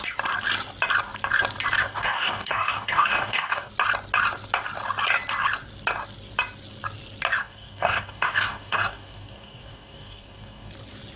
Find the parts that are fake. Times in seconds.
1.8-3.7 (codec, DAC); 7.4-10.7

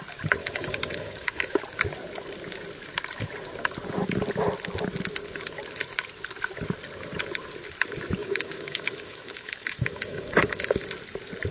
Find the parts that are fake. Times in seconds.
0.4-1.6 (autoencoder, DAC-VAE); 8.2-10.8